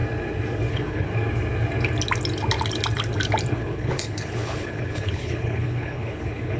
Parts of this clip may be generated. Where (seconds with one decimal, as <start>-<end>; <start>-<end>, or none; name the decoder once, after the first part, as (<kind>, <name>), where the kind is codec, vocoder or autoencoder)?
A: 0.7-1.1 (codec, HILCodec); 3.5-6.6